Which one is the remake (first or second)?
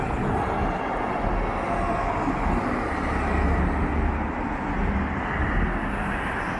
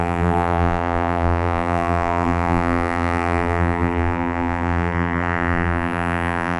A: second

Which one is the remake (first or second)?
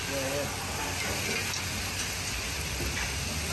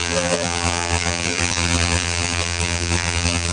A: second